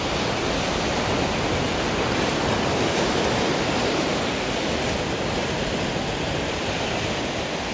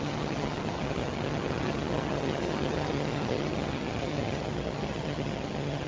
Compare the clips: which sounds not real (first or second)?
second